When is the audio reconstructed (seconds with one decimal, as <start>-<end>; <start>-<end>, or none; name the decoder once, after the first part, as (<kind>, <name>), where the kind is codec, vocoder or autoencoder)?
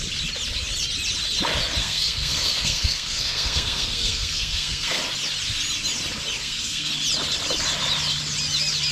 1.8-5.0 (codec, SNAC); 6.4-6.9